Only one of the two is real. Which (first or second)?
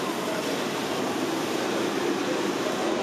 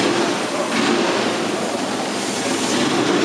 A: second